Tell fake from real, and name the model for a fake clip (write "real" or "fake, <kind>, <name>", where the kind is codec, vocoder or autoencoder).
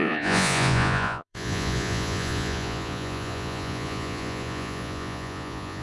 fake, vocoder, Vocos